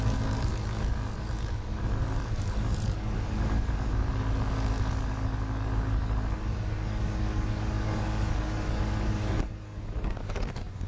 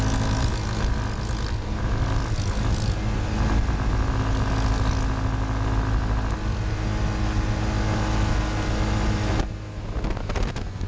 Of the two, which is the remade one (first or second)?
first